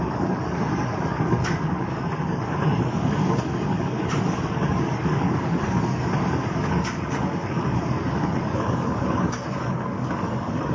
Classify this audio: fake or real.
fake